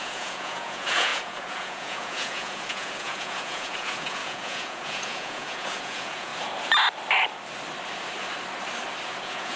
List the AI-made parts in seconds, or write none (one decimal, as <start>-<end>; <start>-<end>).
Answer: 0.0-6.3; 9.2-9.6